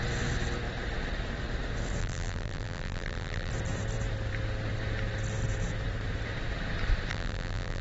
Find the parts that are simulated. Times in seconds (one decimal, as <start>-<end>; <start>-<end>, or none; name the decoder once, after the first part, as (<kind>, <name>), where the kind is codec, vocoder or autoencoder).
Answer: 2.0-3.5 (vocoder, BigVGAN v2); 7.1-7.8